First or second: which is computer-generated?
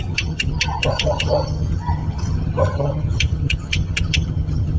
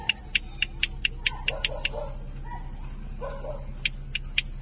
first